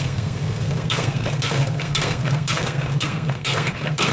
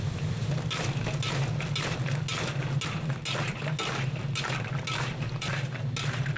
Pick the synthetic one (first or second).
first